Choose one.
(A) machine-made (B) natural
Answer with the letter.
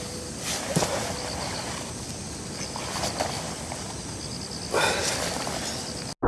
B